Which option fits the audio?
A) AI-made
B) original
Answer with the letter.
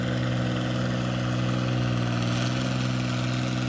B